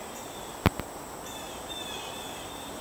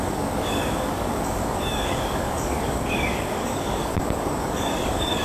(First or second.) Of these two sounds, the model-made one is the second